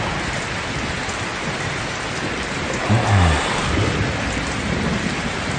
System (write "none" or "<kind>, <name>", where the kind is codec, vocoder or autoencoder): none